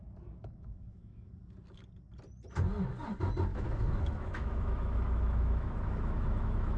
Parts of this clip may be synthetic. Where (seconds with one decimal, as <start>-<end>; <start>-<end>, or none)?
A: 0.4-1.3; 3.5-6.8